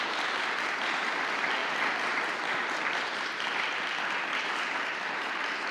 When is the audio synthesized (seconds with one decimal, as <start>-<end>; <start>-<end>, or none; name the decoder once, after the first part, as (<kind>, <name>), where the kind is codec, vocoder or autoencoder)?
1.6-2.2 (vocoder, BigVGAN v2); 2.6-4.3